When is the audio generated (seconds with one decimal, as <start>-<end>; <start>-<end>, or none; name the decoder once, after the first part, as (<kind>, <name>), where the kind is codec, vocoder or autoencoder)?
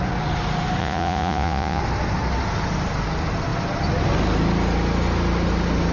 0.8-1.8 (vocoder, Vocos)